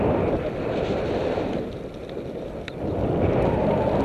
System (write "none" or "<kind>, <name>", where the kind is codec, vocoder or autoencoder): none